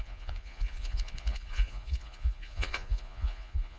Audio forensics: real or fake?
fake